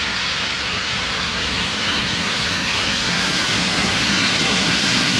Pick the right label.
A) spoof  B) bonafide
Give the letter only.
A